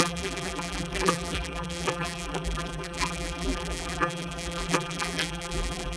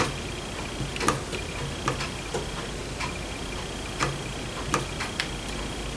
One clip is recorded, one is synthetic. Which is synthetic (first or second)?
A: first